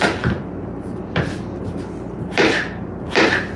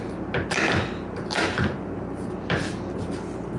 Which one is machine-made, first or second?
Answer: first